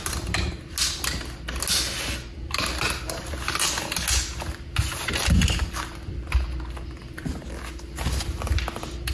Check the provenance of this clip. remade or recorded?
recorded